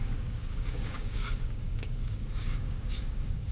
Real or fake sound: fake